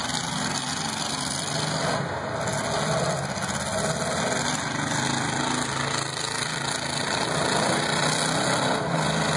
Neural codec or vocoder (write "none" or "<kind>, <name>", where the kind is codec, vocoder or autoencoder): none